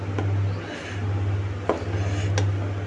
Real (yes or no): yes